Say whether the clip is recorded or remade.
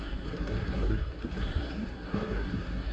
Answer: remade